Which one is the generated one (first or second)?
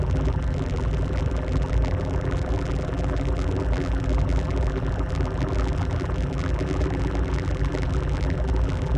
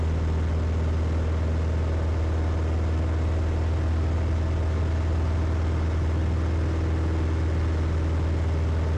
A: first